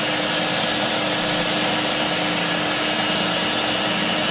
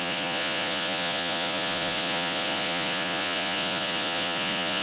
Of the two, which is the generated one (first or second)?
second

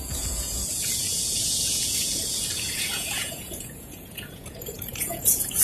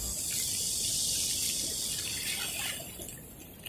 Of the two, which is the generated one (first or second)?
first